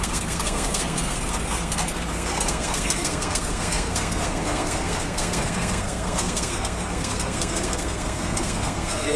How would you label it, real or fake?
fake